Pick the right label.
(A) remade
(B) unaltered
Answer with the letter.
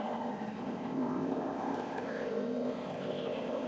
A